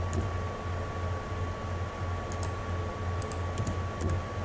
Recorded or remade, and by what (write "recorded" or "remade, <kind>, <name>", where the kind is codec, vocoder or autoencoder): recorded